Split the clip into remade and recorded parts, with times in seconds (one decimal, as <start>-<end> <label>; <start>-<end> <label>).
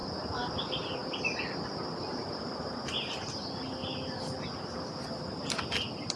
0.0-0.5 remade; 0.5-6.2 recorded